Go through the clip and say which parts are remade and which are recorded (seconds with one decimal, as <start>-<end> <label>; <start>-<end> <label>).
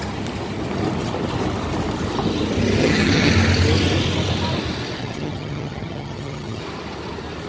0.0-2.8 recorded; 2.8-3.3 remade; 3.3-5.0 recorded; 5.0-6.6 remade; 6.6-7.5 recorded